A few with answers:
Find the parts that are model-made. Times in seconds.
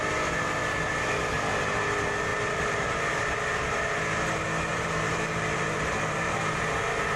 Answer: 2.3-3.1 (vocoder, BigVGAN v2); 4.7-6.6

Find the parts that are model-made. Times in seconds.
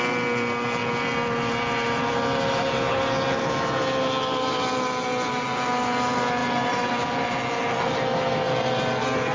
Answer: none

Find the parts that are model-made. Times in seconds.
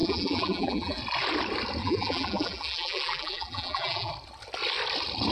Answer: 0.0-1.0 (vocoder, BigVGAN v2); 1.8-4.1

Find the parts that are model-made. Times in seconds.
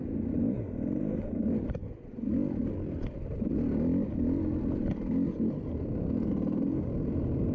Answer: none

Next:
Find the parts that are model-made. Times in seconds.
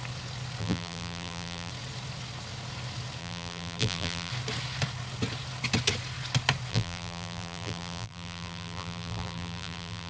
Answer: 0.6-1.7 (vocoder, BigVGAN v2); 3.2-4.3; 6.7-10.1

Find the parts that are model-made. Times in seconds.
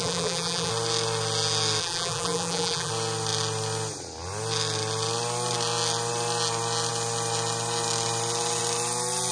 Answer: 0.0-0.7 (vocoder, BigVGAN v2); 1.8-2.9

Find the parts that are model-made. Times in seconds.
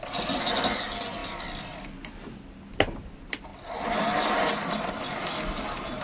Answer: 1.2-2.0 (vocoder, BigVGAN v2); 3.5-6.0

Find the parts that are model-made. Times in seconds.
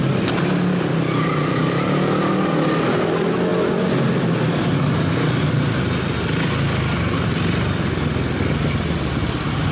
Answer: 0.0-0.8 (vocoder, BigVGAN v2)